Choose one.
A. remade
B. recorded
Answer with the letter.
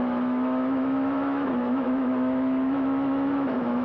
A